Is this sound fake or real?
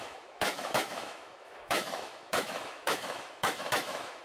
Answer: fake